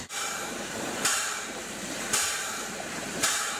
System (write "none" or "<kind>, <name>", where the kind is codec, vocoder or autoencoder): vocoder, BigVGAN v2